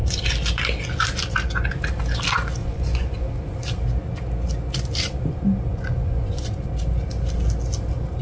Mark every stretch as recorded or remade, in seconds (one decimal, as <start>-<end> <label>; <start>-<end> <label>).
0.0-2.6 recorded; 2.6-3.2 remade; 3.2-5.7 recorded; 5.7-6.5 remade; 6.5-8.2 recorded